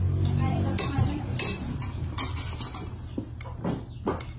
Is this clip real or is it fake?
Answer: real